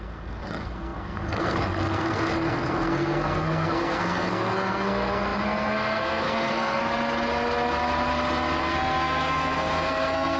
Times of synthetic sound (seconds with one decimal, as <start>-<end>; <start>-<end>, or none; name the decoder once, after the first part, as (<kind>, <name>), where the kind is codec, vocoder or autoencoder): 0.0-6.8 (codec, SNAC); 8.6-10.4